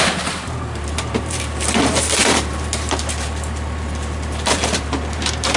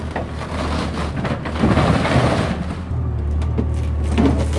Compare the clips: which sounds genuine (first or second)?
second